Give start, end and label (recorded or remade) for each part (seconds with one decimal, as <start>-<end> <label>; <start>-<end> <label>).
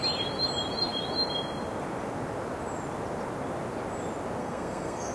0.0-4.4 recorded; 4.4-5.1 remade